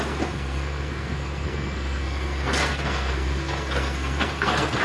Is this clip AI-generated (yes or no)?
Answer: yes